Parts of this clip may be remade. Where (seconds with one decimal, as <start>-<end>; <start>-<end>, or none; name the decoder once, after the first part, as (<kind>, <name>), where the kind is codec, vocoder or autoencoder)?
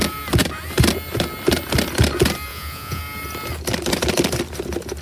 2.5-3.0 (vocoder, Vocos)